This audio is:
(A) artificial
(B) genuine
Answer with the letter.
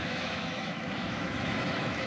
A